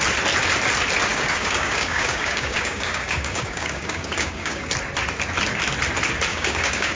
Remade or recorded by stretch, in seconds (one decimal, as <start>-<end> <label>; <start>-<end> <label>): 0.0-1.1 recorded; 1.1-4.7 remade; 4.7-6.3 recorded; 6.3-7.0 remade